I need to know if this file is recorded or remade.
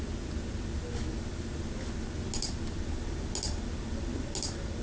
recorded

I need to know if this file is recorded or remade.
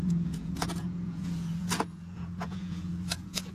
remade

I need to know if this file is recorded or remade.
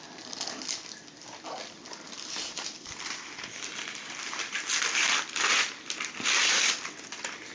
recorded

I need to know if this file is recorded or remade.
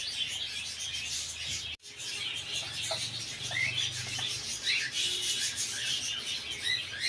recorded